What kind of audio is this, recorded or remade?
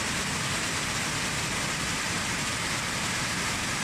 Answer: recorded